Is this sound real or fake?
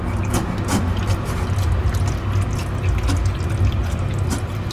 real